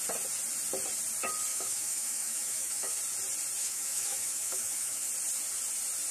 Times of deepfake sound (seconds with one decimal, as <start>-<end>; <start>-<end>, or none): 1.5-3.0; 3.6-5.1